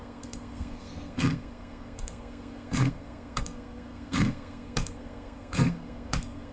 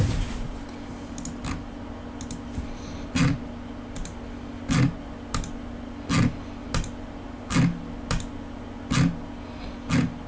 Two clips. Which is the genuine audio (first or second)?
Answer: second